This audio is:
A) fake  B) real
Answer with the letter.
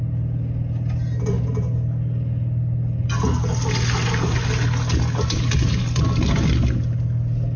B